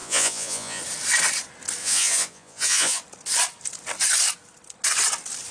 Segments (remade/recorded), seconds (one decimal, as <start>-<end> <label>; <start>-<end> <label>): 0.0-0.8 remade; 0.8-1.8 recorded; 1.8-3.0 remade; 3.0-5.5 recorded